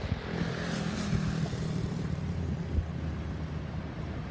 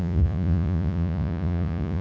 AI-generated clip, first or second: second